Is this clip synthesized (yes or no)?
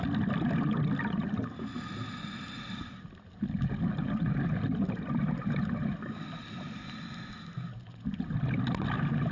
no